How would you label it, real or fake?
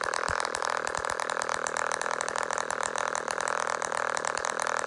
real